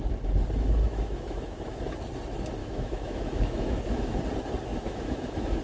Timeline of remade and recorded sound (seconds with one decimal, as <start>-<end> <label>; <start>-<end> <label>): 0.0-0.8 recorded; 0.8-1.8 remade; 1.8-2.6 recorded; 2.6-4.2 remade; 4.2-4.7 recorded; 4.7-5.6 remade